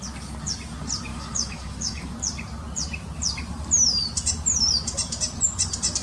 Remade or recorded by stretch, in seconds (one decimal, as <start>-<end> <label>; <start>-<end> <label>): 0.0-1.1 recorded; 1.1-2.1 remade; 2.1-6.0 recorded